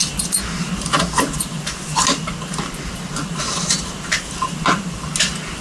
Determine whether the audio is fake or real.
real